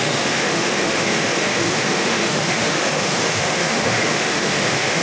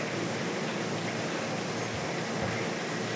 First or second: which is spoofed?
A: first